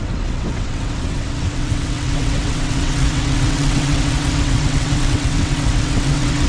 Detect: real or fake fake